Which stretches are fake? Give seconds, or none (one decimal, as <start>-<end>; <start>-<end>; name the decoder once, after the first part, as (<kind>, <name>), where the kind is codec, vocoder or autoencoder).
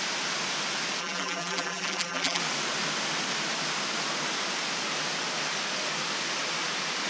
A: 1.0-2.4 (vocoder, BigVGAN v2)